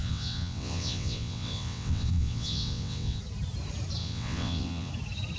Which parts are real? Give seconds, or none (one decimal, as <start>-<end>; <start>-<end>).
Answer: 3.2-4.0; 4.9-5.4